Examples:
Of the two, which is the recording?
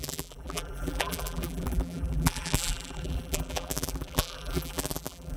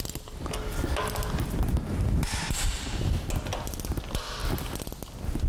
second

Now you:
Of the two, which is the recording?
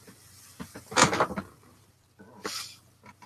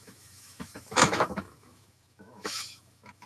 first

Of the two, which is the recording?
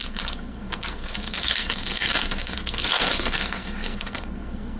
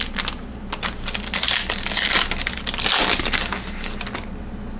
second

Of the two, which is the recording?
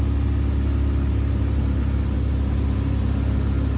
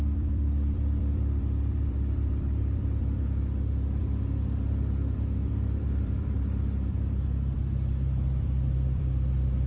first